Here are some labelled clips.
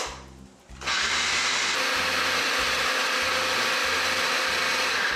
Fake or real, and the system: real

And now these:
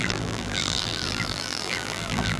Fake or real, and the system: fake, vocoder, BigVGAN v2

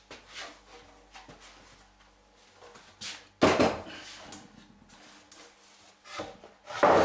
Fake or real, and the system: real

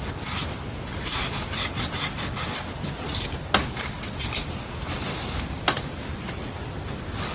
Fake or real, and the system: real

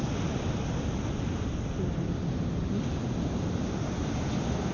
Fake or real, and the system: real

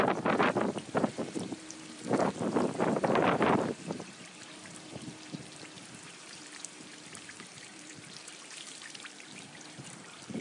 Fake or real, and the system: fake, vocoder, BigVGAN v2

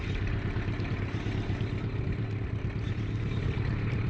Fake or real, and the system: fake, vocoder, BigVGAN v2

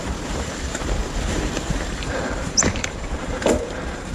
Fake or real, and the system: fake, vocoder, BigVGAN v2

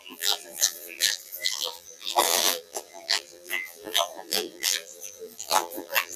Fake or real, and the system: fake, vocoder, BigVGAN v2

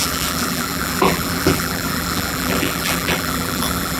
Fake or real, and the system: fake, vocoder, BigVGAN v2